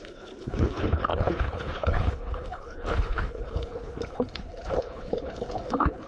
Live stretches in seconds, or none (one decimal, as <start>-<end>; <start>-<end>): none